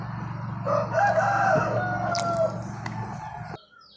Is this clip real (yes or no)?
yes